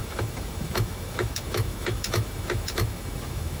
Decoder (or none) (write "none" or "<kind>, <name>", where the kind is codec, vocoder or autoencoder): autoencoder, DAC-VAE